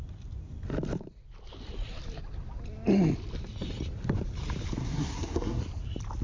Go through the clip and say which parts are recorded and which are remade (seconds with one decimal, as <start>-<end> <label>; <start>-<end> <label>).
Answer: 0.0-4.8 recorded; 4.8-5.6 remade; 5.6-6.2 recorded